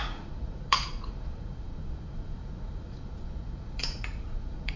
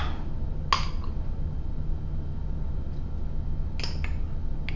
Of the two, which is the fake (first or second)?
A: first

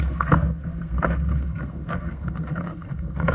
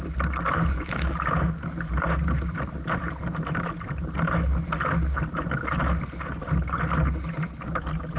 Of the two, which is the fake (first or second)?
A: first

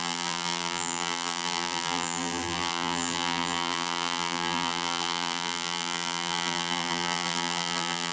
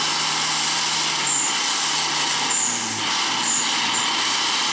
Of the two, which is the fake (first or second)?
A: first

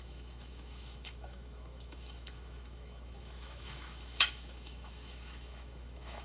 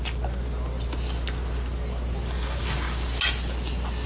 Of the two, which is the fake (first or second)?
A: first